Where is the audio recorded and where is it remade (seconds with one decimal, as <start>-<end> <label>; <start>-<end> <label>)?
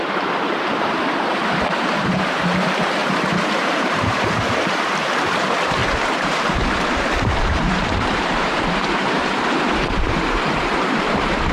0.0-11.5 remade